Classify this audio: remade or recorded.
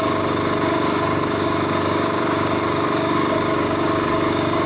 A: remade